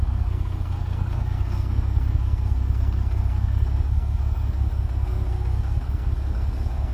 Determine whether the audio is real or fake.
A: fake